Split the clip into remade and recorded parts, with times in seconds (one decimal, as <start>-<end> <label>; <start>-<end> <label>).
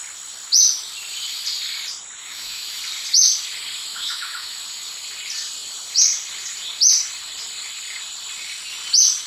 0.0-2.2 recorded; 2.2-2.8 remade; 2.8-3.9 recorded; 3.9-4.6 remade; 4.6-9.3 recorded